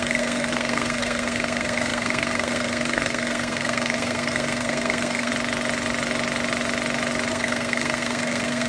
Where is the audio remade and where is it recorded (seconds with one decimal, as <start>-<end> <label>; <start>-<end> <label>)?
0.0-5.3 remade; 5.3-7.3 recorded; 7.3-8.7 remade

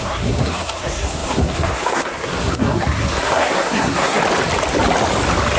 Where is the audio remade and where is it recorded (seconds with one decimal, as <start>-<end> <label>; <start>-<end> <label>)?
0.0-4.2 remade; 4.2-5.6 recorded

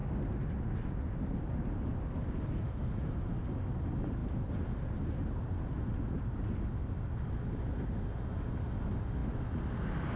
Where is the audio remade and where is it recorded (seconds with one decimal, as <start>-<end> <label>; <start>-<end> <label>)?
0.0-10.2 recorded

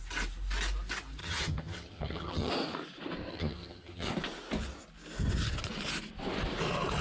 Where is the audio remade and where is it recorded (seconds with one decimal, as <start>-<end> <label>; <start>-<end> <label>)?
0.0-1.2 recorded; 1.2-2.5 remade; 2.5-3.3 recorded; 3.3-4.1 remade; 4.1-7.0 recorded

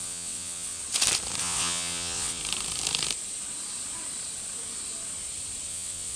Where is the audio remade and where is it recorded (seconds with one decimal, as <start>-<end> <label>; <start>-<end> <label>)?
0.0-0.8 remade; 0.8-1.4 recorded; 1.4-2.4 remade; 2.4-5.7 recorded; 5.7-6.2 remade

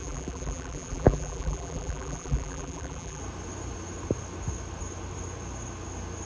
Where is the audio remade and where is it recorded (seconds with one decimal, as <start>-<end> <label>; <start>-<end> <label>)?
0.0-3.2 remade; 3.2-6.2 recorded

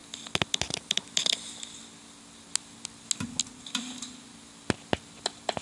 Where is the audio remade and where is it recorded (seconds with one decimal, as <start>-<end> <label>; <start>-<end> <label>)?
0.0-5.6 recorded